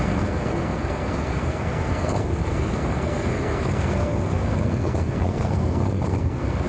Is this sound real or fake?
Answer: fake